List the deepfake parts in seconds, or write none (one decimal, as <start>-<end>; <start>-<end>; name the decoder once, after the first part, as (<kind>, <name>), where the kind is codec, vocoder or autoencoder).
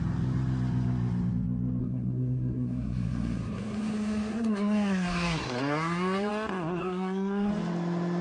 1.8-6.3 (codec, SNAC); 6.8-7.5